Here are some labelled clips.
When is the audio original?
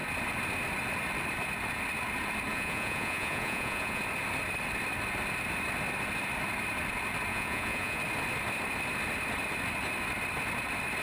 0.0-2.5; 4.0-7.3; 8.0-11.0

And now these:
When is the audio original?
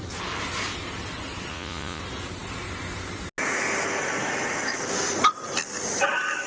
0.0-1.5; 2.0-6.5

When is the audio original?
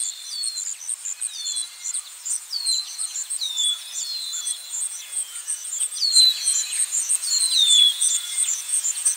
0.0-1.9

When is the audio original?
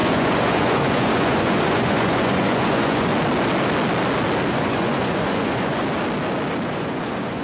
3.1-4.5; 5.8-6.7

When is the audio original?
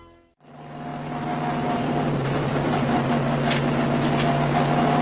0.0-5.0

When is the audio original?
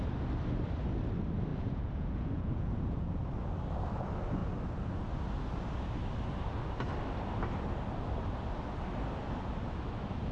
0.0-1.5; 3.2-10.3